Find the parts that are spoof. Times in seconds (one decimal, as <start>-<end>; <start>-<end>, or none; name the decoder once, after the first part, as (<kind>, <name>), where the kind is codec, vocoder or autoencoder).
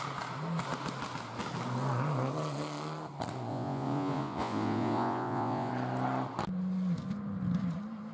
3.5-5.7 (vocoder, Vocos)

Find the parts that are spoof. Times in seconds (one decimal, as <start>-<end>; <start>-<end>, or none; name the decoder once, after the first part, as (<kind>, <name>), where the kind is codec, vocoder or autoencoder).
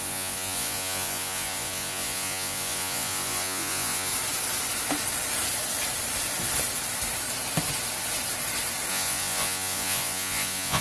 0.0-4.1 (vocoder, Vocos); 8.9-10.8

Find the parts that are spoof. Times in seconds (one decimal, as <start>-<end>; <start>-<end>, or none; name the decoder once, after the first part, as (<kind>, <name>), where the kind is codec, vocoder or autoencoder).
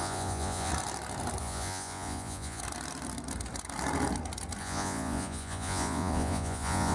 0.0-0.7 (vocoder, Vocos); 1.4-2.6; 4.6-6.9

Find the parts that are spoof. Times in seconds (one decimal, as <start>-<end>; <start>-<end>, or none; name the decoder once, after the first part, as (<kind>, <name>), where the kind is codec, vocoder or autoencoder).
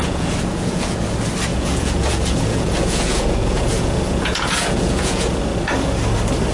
0.0-1.0 (vocoder, Vocos); 1.5-5.4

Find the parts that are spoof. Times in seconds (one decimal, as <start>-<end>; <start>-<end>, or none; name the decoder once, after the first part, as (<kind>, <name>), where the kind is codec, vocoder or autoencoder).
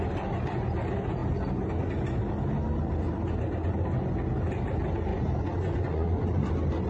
5.1-6.5 (vocoder, Vocos)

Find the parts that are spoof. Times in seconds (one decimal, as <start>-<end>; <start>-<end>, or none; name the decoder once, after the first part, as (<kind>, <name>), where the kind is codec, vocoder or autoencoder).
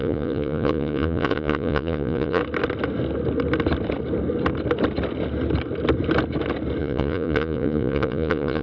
0.0-2.4 (vocoder, Vocos); 6.8-8.6